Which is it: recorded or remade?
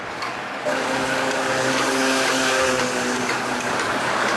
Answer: remade